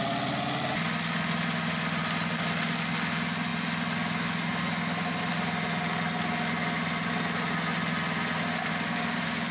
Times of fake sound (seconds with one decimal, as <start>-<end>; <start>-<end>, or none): none